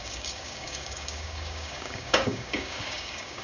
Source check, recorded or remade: remade